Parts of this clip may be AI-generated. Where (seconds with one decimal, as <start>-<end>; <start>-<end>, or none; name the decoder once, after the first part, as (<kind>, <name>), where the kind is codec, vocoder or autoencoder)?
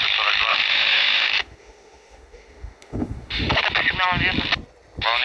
0.5-3.6 (autoencoder, DAC-VAE)